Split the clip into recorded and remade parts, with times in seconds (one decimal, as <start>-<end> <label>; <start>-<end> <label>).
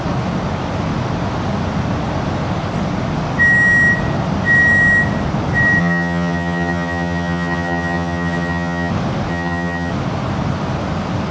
0.0-5.8 recorded; 5.8-8.9 remade; 8.9-9.3 recorded; 9.3-9.9 remade; 9.9-11.3 recorded